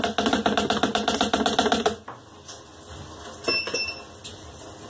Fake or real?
real